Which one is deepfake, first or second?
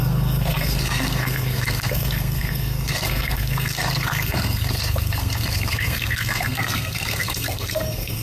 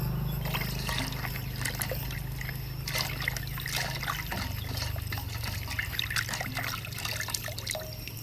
first